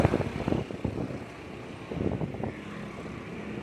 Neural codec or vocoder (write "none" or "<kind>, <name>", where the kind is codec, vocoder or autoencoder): none